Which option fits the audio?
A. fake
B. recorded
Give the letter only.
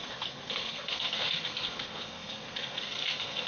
A